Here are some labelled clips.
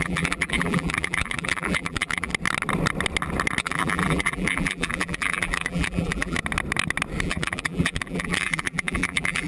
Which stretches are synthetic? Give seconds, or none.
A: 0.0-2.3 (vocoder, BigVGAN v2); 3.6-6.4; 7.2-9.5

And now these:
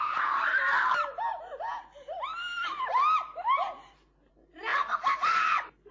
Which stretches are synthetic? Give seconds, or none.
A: 2.3-4.3 (vocoder, BigVGAN v2); 4.7-5.5

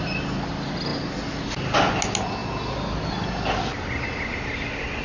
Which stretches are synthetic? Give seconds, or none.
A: none

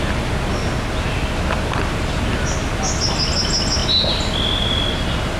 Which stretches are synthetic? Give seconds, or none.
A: none

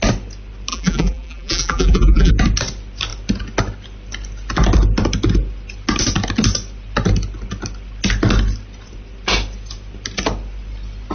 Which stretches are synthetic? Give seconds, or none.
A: 0.7-2.3 (vocoder, BigVGAN v2)

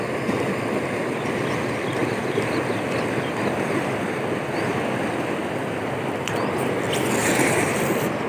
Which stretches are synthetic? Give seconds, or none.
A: 2.0-3.0 (vocoder, BigVGAN v2); 7.2-7.8

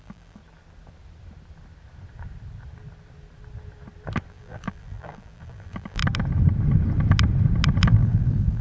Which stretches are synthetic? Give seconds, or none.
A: 0.0-0.4 (vocoder, BigVGAN v2); 4.3-6.0; 7.8-8.6